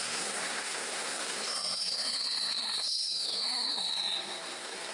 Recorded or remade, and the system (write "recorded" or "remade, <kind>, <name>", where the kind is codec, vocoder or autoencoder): remade, codec, SNAC